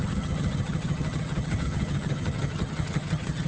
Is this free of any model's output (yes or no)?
no